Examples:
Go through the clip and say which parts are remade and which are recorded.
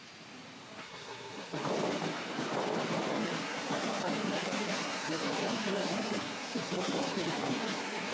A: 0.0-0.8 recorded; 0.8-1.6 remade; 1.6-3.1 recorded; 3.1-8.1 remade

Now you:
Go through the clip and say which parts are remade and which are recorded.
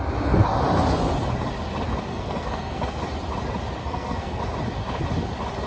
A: 0.0-2.1 recorded; 2.1-3.0 remade; 3.0-3.8 recorded; 3.8-4.4 remade; 4.4-5.7 recorded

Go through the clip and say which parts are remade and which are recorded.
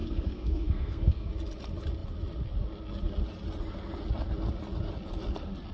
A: 0.0-1.3 remade; 1.3-5.7 recorded